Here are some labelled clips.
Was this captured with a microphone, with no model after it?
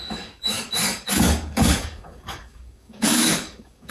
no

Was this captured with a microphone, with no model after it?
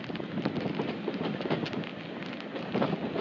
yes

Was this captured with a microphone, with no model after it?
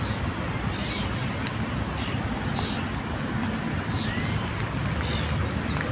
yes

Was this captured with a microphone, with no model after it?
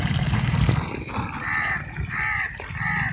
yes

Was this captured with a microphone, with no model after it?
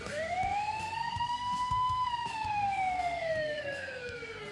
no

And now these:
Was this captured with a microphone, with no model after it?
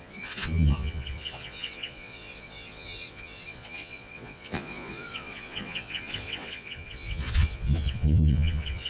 no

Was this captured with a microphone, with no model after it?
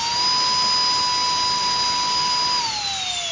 yes